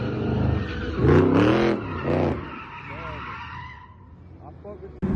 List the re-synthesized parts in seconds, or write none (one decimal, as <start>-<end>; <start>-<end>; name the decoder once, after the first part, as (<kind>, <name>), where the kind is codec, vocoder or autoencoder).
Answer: none